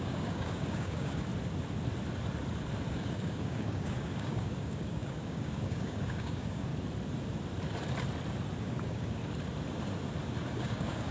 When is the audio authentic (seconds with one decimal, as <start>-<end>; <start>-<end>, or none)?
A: 1.3-2.9; 6.7-8.6; 9.2-10.6